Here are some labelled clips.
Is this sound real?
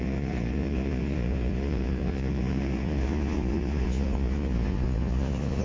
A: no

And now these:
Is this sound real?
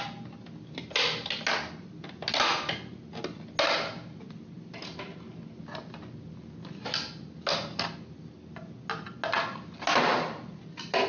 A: yes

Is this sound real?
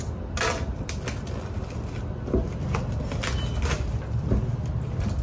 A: yes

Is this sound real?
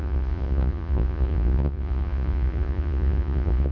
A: no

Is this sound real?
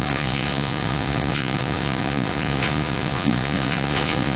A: no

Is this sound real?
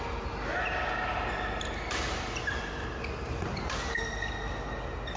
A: yes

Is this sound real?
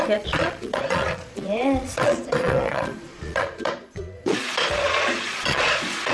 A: no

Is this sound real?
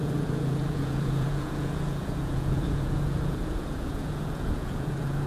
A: no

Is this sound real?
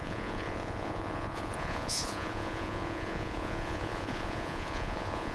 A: no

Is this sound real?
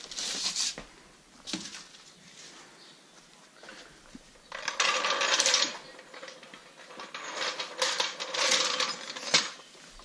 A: yes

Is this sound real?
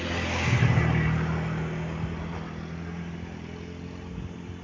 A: yes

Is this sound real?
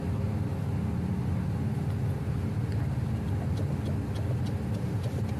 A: yes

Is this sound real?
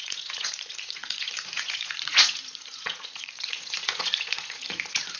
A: no